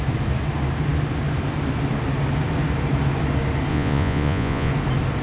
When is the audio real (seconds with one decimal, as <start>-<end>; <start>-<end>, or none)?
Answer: 0.0-3.7; 4.7-5.2